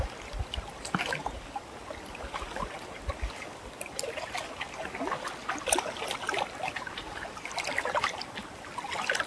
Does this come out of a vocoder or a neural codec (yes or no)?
no